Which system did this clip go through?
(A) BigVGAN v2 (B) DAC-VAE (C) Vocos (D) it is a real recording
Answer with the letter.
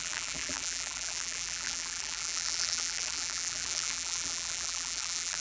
A